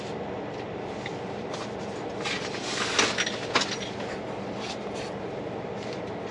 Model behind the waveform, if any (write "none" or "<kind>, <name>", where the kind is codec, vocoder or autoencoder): none